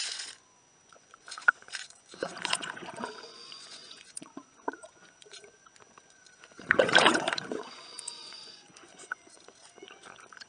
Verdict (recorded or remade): remade